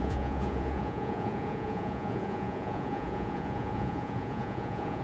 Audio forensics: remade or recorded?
remade